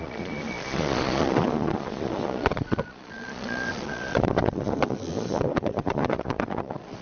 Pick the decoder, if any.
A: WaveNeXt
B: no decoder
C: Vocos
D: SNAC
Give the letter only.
C